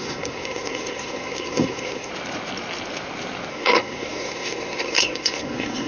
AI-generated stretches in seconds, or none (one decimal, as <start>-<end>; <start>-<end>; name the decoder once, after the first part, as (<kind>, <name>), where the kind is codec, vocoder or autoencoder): 0.0-2.1 (codec, SNAC); 3.5-5.9

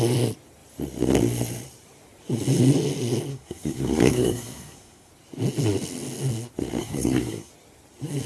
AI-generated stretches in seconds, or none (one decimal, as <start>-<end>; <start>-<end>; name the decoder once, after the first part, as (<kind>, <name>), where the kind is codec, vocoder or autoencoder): 3.3-5.1 (codec, SNAC); 6.8-7.5

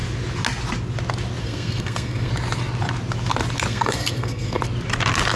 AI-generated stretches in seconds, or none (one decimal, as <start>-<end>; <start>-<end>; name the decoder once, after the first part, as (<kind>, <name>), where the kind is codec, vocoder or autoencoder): 1.4-2.3 (codec, SNAC); 3.7-4.6

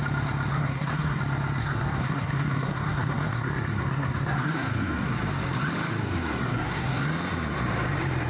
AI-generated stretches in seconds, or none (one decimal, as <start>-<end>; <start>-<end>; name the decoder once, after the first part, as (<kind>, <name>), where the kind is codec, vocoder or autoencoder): 0.5-1.2 (codec, SNAC); 1.6-5.1; 6.0-7.0

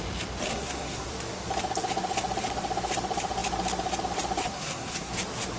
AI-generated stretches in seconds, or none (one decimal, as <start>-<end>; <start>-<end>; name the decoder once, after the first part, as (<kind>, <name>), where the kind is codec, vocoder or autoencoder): 0.5-1.1 (codec, SNAC); 4.4-5.1

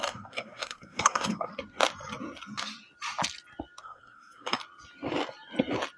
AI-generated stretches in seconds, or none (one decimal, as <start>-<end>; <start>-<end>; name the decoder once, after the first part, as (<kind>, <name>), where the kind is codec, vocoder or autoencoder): 0.0-1.5 (codec, SNAC); 3.8-4.6